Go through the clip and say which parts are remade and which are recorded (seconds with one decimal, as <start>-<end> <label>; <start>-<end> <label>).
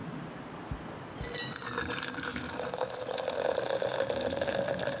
0.0-2.3 recorded; 2.3-2.9 remade; 2.9-5.0 recorded